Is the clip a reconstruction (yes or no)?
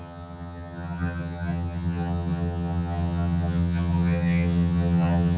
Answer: yes